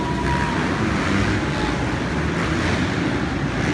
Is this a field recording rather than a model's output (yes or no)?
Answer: yes